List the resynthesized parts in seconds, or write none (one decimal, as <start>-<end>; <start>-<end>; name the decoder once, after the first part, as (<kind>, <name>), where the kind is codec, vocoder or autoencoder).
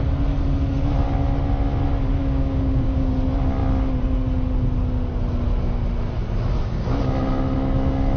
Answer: 2.2-3.1 (codec, DAC)